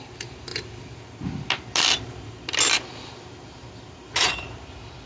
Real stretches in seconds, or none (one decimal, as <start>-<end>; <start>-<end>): 0.0-5.1